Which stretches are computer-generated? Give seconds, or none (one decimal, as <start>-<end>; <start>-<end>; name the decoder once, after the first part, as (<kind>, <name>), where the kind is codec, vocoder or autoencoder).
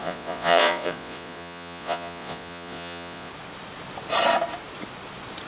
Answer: 0.0-3.3 (vocoder, Vocos)